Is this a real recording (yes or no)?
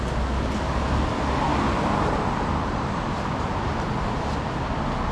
yes